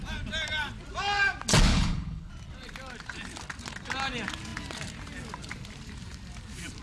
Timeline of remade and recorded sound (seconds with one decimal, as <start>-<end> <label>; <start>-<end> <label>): 0.0-1.7 recorded; 1.7-2.3 remade; 2.3-6.8 recorded